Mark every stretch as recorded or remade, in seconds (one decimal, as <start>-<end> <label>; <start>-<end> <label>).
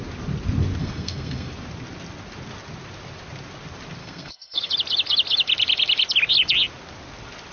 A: 0.0-0.8 recorded; 0.8-1.5 remade; 1.5-4.0 recorded; 4.0-4.7 remade; 4.7-7.5 recorded